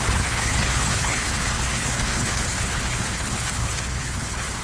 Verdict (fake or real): fake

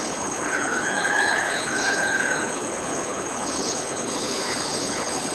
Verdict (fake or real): fake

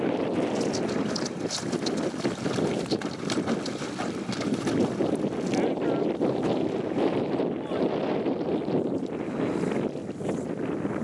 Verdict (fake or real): real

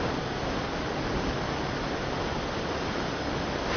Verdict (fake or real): real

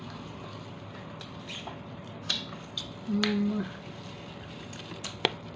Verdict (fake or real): real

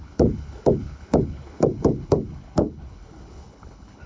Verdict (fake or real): fake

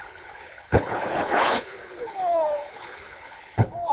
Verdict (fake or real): fake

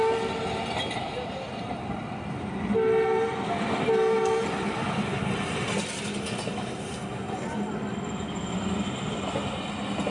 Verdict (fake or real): real